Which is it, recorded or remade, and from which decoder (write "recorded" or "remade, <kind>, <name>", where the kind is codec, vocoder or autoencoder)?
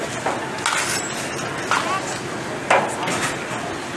recorded